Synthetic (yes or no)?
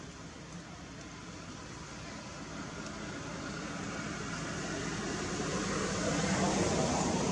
no